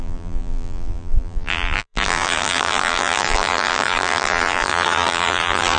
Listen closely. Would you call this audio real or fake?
fake